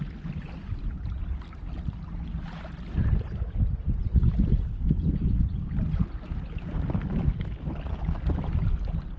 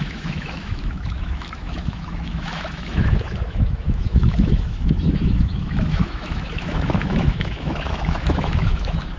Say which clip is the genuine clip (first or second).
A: first